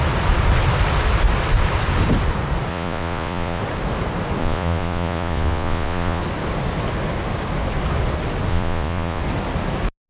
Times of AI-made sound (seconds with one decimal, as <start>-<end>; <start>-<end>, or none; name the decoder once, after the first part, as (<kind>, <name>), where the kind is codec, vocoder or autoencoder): 2.7-3.6 (vocoder, Vocos); 4.4-6.2; 8.5-9.2